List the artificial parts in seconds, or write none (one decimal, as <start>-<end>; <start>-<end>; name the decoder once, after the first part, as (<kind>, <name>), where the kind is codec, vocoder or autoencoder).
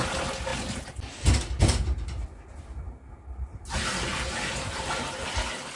3.5-5.3 (vocoder, BigVGAN v2)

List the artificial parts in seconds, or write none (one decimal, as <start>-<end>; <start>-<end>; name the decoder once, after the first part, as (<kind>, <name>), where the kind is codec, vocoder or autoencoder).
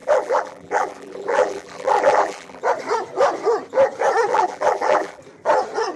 0.0-2.6 (vocoder, BigVGAN v2); 4.3-5.2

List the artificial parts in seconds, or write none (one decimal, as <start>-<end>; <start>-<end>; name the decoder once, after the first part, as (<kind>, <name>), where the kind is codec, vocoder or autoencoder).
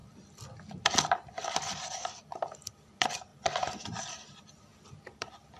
0.0-3.3 (vocoder, BigVGAN v2); 4.0-5.6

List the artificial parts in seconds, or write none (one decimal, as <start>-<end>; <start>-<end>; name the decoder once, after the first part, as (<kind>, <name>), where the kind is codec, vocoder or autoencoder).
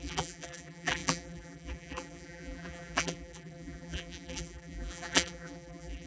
0.0-6.1 (vocoder, BigVGAN v2)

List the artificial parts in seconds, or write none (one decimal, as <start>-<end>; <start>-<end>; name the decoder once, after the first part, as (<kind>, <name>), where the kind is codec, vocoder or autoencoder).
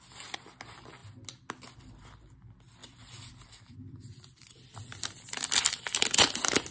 2.8-6.7 (vocoder, BigVGAN v2)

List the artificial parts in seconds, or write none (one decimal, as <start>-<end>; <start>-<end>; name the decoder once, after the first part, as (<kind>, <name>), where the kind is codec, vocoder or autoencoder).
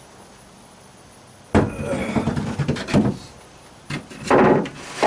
2.0-4.0 (vocoder, BigVGAN v2)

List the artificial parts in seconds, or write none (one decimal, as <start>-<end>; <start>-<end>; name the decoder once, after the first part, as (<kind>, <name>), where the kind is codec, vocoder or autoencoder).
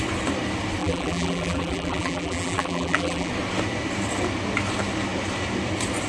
0.8-3.3 (vocoder, BigVGAN v2)